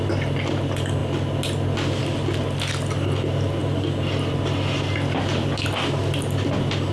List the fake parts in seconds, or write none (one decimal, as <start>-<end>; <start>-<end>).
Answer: none